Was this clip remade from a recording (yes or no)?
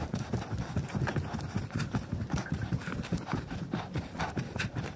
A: no